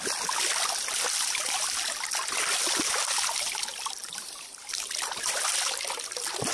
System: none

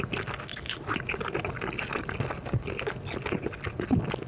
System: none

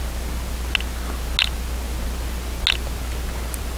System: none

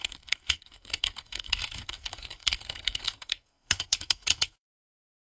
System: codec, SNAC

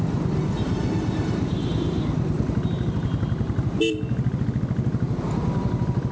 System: none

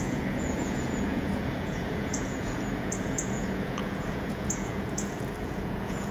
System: vocoder, Vocos